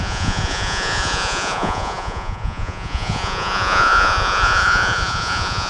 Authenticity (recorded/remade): remade